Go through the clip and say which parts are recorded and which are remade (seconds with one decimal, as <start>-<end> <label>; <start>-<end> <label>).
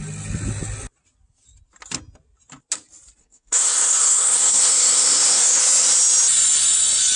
0.0-3.2 recorded; 3.2-5.6 remade; 5.6-7.2 recorded